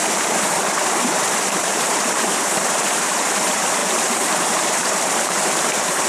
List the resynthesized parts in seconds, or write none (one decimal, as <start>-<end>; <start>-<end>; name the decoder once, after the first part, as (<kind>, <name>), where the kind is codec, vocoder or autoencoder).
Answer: 1.6-6.1 (vocoder, BigVGAN v2)